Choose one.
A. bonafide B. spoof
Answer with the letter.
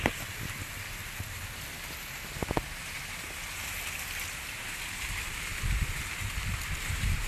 A